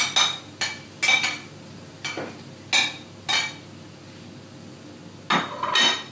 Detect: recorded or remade recorded